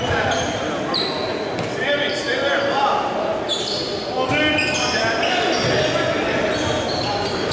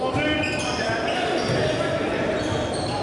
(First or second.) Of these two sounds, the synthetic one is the second